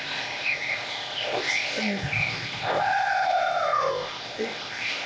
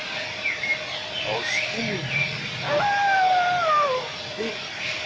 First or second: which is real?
second